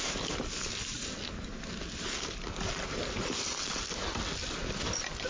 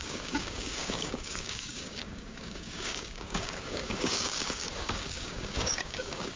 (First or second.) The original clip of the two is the first